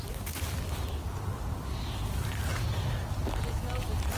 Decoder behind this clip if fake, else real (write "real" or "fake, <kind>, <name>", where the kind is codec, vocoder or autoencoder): real